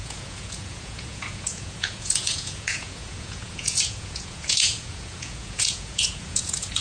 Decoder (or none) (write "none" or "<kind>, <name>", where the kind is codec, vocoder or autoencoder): vocoder, Vocos